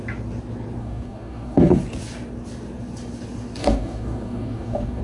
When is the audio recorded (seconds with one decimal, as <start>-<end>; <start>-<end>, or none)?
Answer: 0.0-0.8; 1.8-3.6